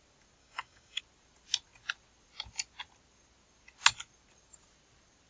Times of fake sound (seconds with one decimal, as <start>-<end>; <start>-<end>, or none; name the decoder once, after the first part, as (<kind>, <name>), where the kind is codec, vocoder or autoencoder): 0.4-1.0 (codec, DAC)

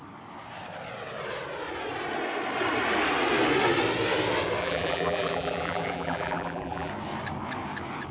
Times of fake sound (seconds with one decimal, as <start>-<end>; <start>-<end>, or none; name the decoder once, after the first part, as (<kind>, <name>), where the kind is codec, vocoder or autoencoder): 4.6-6.9 (vocoder, BigVGAN v2)